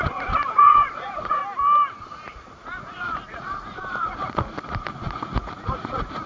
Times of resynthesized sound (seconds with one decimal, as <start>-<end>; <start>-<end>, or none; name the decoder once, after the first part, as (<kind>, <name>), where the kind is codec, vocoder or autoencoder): 0.0-1.4 (vocoder, Vocos); 2.1-6.3